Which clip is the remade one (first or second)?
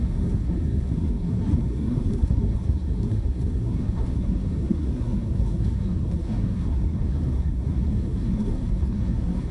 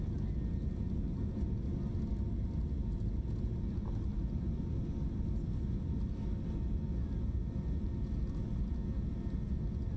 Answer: first